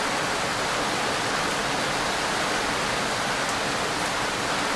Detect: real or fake real